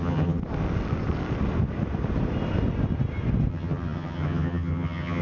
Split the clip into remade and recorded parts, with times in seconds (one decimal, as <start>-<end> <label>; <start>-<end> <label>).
0.0-0.4 remade; 0.4-3.5 recorded; 3.5-5.2 remade